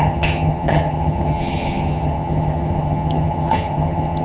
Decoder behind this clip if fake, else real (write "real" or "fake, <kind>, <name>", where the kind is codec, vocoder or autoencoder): fake, vocoder, HiFi-GAN